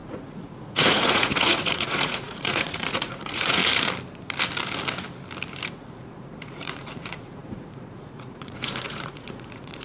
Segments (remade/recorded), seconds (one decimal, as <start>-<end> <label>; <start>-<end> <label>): 0.0-3.6 remade; 3.6-5.7 recorded; 5.7-9.8 remade